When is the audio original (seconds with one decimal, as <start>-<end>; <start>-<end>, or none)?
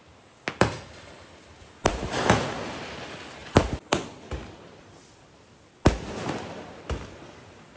0.0-3.4